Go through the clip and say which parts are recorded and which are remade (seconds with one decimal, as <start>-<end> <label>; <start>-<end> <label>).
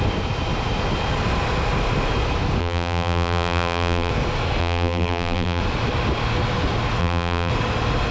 0.0-2.6 recorded; 2.6-4.1 remade; 4.1-4.6 recorded; 4.6-5.6 remade; 5.6-7.0 recorded; 7.0-7.5 remade; 7.5-8.1 recorded